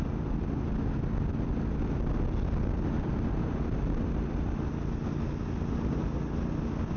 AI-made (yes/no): no